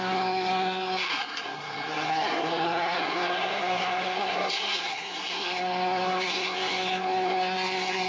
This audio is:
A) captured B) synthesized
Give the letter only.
B